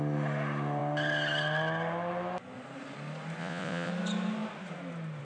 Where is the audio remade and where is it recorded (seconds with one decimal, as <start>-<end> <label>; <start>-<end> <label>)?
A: 0.0-3.4 recorded; 3.4-3.9 remade; 3.9-5.2 recorded